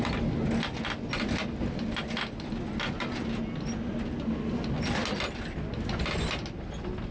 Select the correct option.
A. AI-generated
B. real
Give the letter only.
B